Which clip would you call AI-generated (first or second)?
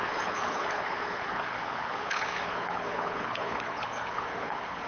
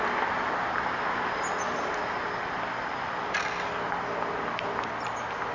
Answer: first